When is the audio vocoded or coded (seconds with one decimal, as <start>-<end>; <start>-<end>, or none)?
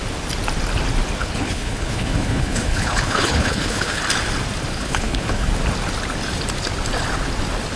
1.2-4.0; 4.7-5.5